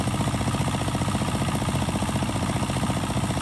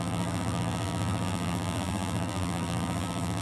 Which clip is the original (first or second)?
first